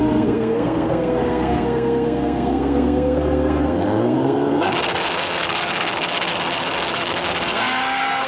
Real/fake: fake